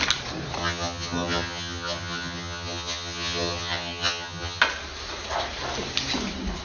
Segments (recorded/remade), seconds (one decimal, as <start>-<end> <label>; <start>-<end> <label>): 0.0-0.6 recorded; 0.6-4.6 remade; 4.6-6.6 recorded